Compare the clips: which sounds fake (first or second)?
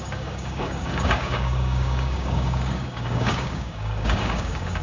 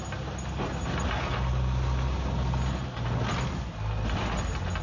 first